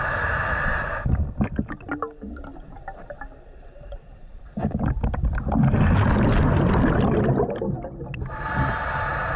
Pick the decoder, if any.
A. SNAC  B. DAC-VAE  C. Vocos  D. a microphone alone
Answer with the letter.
D